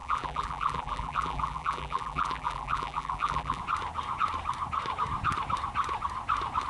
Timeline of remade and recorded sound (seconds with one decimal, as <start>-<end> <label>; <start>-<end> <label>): 0.0-3.6 remade; 3.6-6.7 recorded